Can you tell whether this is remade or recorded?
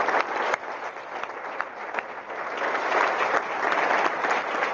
recorded